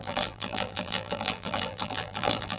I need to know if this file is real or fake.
fake